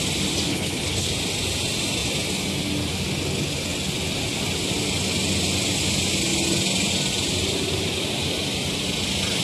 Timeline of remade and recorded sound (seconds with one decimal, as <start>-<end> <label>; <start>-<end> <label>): 0.0-0.5 recorded; 0.5-1.1 remade; 1.1-9.4 recorded